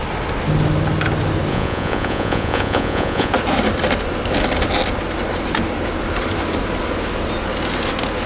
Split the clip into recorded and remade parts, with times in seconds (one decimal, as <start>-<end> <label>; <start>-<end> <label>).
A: 0.0-1.5 recorded; 1.5-3.3 remade; 3.3-8.3 recorded